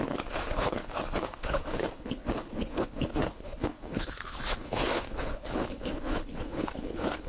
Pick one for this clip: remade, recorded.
remade